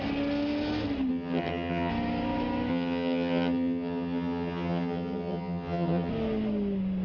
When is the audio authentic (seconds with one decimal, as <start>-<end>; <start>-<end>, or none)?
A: 0.0-1.1; 1.9-2.7; 6.1-7.0